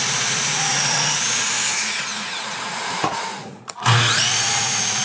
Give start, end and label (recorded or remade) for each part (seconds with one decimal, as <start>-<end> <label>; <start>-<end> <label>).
0.0-5.0 remade